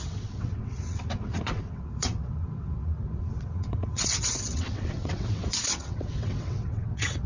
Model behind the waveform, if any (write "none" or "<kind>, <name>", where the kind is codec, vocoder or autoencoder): vocoder, WaveNeXt